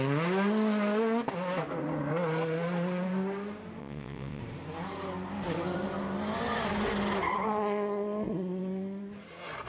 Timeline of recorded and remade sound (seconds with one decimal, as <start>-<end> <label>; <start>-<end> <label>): 0.0-3.8 recorded; 3.8-4.4 remade; 4.4-9.7 recorded